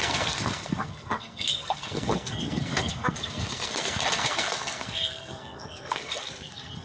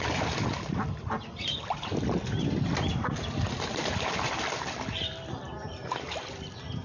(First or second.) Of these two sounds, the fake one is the first